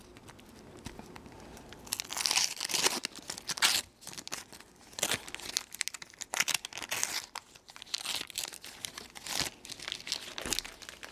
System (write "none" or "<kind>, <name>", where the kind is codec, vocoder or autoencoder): none